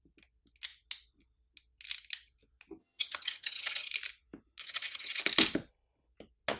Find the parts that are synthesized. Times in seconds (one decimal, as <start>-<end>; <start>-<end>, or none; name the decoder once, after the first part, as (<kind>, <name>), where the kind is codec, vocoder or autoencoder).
2.8-3.9 (vocoder, HiFi-GAN); 4.6-5.2